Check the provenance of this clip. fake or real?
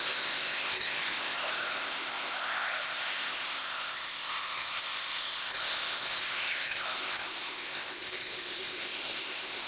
fake